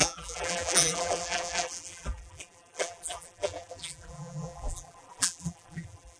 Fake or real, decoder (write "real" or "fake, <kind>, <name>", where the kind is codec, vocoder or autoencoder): fake, vocoder, BigVGAN v2